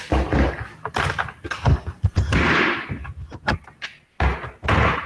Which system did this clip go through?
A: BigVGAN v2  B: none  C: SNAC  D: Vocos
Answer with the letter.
B